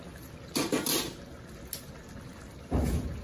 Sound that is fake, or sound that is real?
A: real